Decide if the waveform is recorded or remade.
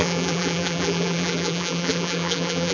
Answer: remade